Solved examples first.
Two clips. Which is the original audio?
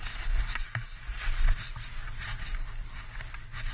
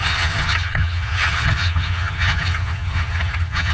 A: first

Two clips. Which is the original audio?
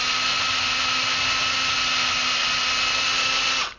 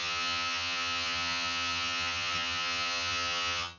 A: first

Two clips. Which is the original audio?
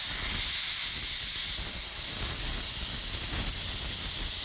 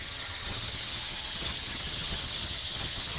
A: first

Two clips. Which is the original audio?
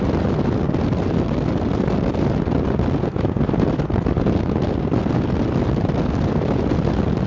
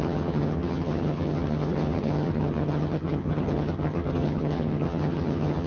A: first